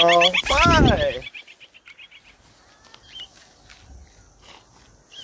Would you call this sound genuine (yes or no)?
yes